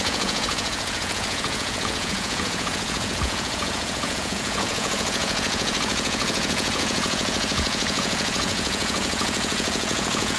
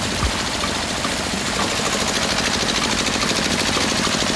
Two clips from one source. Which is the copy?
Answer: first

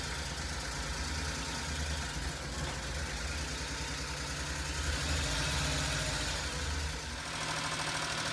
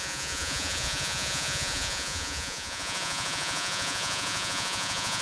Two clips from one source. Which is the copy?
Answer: second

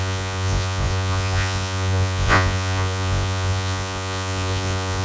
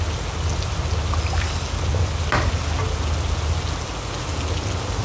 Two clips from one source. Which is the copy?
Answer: first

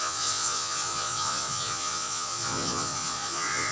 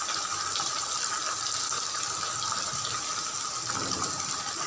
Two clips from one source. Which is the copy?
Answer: first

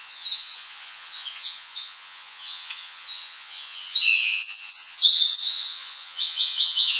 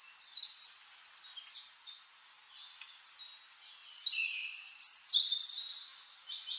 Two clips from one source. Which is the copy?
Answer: first